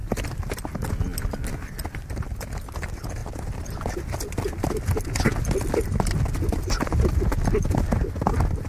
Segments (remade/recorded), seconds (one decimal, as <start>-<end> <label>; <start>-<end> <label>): 0.0-0.9 remade; 0.9-8.7 recorded